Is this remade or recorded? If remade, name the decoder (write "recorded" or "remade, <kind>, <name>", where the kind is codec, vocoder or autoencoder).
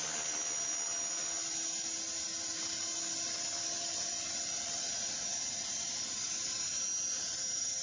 recorded